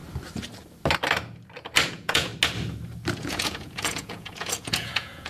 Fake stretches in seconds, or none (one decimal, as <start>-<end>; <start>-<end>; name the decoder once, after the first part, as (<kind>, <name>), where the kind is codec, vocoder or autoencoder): 1.9-2.3 (vocoder, Vocos); 3.2-5.3